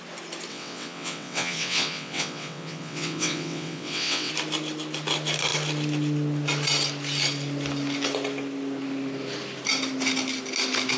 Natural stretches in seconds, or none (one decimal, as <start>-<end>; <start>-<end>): 0.0-0.5; 4.3-11.0